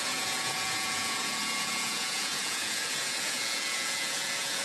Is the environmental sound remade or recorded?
remade